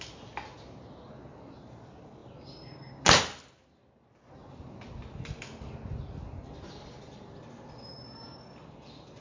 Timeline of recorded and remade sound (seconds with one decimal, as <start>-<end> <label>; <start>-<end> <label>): 0.0-9.2 recorded